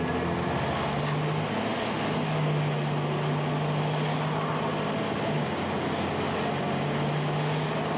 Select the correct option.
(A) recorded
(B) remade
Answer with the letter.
A